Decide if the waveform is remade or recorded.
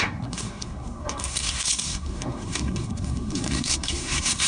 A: remade